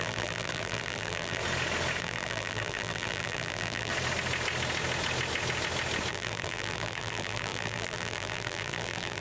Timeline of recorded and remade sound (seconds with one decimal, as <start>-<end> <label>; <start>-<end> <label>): 0.0-1.4 remade; 1.4-2.0 recorded; 2.0-3.9 remade; 3.9-6.1 recorded; 6.1-9.2 remade

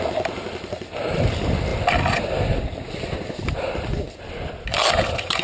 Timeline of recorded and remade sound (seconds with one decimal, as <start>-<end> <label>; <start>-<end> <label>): 0.0-5.4 recorded

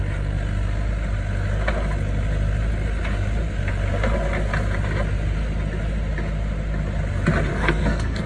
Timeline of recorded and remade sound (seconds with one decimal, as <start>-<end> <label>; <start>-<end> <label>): 0.0-7.5 recorded; 7.5-8.3 remade

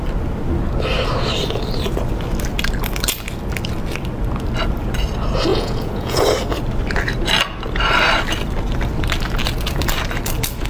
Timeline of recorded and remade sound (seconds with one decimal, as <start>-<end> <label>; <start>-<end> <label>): 0.0-5.5 recorded; 5.5-6.2 remade; 6.2-10.7 recorded

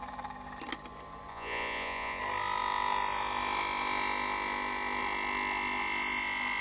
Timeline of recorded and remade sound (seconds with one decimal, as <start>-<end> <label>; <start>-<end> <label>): 0.0-1.3 recorded; 1.3-2.2 remade; 2.2-6.6 recorded

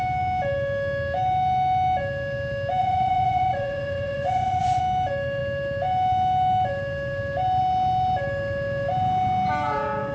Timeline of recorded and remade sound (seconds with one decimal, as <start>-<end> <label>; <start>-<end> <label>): 0.0-2.8 recorded; 2.8-4.8 remade; 4.8-10.1 recorded

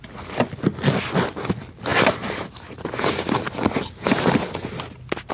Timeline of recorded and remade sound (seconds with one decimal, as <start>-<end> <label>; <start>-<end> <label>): 0.0-5.3 recorded